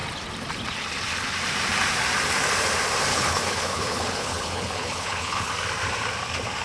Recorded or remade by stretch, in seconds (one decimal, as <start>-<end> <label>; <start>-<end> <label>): 0.0-3.1 recorded; 3.1-5.5 remade; 5.5-6.6 recorded